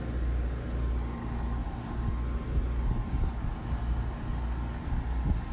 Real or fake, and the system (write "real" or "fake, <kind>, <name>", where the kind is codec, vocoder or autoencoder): real